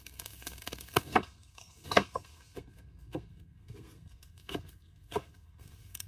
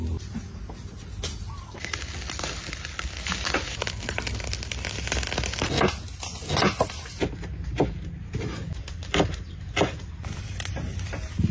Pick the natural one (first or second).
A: second